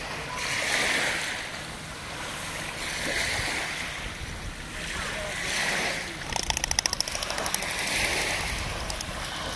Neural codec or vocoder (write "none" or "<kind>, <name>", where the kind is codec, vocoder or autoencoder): none